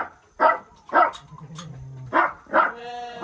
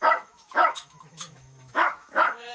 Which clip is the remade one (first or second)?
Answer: second